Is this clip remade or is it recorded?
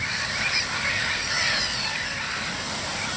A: remade